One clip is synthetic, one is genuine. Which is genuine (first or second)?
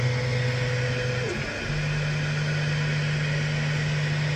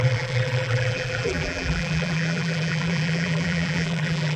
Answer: first